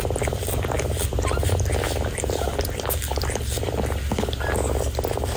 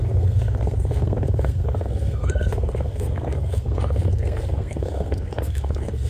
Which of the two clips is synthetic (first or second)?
second